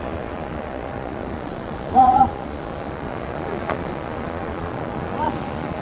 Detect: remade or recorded remade